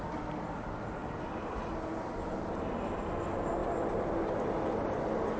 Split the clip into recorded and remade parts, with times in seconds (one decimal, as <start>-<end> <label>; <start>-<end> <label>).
0.0-5.4 recorded